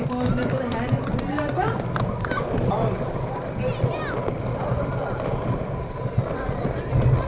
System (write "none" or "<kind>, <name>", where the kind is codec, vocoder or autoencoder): none